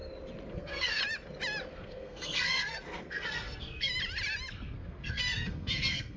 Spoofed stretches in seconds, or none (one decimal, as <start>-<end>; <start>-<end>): 0.5-1.0; 1.7-3.9; 4.5-6.2